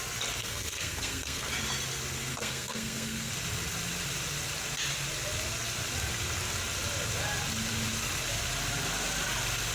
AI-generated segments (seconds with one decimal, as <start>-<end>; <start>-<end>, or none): 0.4-1.5; 2.3-3.3